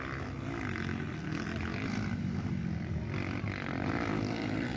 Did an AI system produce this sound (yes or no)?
no